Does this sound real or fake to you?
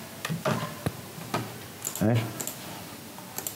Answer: real